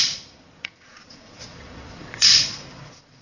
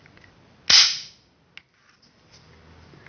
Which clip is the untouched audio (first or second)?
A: second